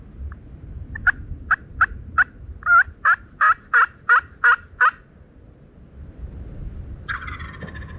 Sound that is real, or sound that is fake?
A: real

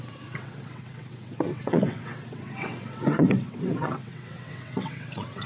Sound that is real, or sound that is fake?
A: fake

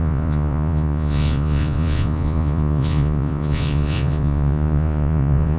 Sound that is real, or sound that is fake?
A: fake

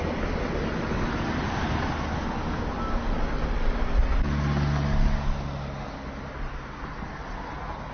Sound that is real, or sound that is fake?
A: real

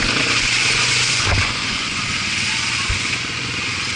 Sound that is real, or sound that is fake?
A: fake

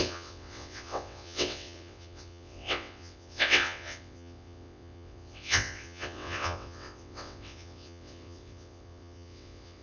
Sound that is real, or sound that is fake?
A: fake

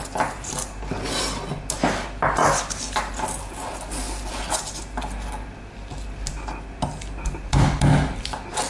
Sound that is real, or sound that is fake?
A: real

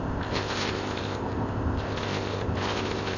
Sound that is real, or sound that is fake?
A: fake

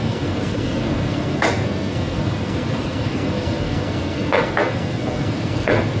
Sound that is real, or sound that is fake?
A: fake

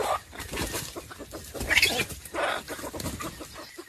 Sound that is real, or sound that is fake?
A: real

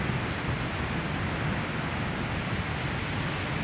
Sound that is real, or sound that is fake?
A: real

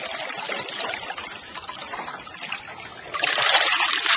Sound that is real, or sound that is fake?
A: real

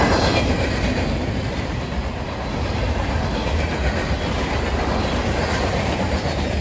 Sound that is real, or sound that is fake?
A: real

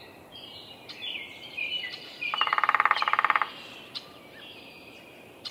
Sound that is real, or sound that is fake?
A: fake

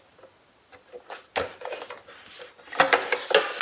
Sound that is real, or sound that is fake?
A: real